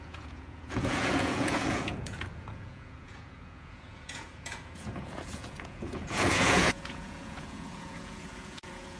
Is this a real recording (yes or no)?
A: no